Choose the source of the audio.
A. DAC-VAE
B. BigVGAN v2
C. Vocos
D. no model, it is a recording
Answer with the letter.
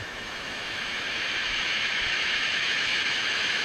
A